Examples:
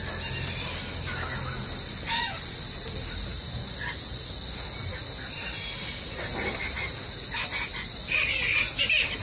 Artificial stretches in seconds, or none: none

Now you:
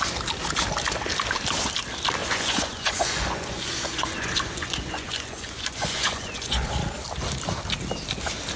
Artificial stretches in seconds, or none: 2.2-6.7 (vocoder, Vocos)

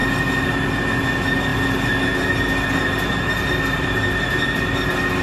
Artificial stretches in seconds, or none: none

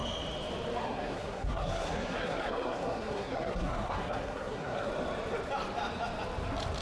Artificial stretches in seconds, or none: 0.8-4.9 (codec, SNAC)